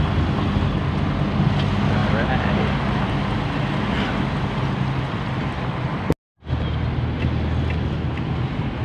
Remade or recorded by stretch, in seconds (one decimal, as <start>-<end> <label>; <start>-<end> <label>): 0.0-8.8 recorded